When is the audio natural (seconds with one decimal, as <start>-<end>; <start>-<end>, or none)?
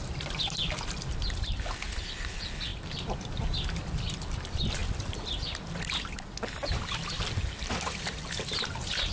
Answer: 0.0-9.1